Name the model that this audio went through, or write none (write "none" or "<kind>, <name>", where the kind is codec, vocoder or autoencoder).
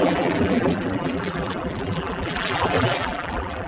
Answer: vocoder, BigVGAN v2